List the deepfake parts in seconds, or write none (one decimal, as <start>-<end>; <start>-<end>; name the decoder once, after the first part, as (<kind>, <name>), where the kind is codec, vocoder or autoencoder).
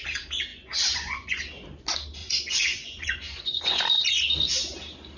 0.5-1.4 (vocoder, Vocos); 2.2-3.8